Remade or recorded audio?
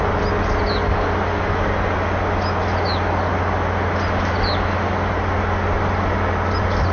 recorded